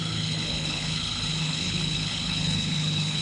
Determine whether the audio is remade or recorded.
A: remade